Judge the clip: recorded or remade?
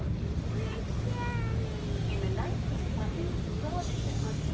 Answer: recorded